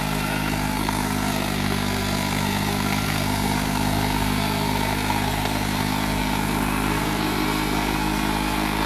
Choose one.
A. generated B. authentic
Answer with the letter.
A